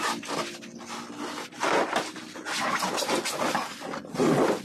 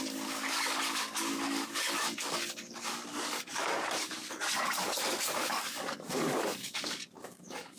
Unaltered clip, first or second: first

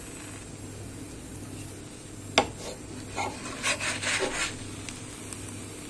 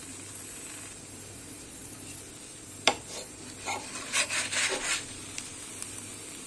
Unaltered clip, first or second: first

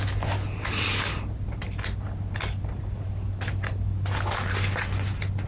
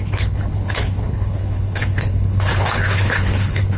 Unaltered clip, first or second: first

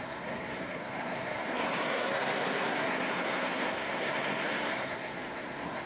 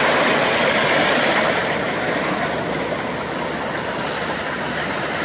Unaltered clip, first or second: second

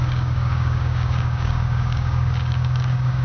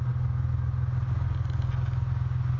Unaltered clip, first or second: second